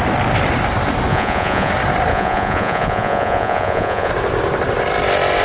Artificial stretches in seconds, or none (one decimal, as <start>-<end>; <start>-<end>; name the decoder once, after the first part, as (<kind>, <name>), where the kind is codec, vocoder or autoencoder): 1.1-1.7 (vocoder, Vocos); 2.1-4.1